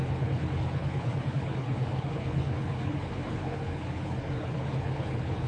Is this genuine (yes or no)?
no